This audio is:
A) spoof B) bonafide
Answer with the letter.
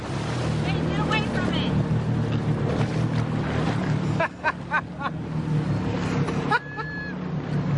B